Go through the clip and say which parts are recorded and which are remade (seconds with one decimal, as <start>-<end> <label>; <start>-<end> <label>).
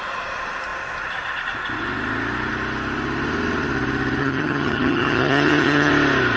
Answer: 0.0-4.2 recorded; 4.2-5.9 remade; 5.9-6.4 recorded